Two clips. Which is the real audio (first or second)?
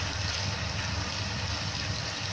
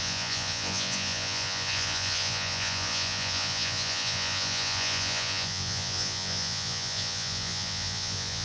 first